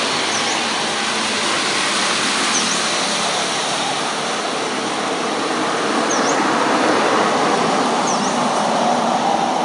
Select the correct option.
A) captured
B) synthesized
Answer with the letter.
A